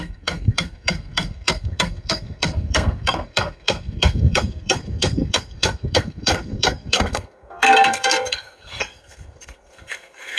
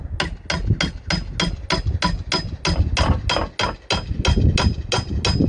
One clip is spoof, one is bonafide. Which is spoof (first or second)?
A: first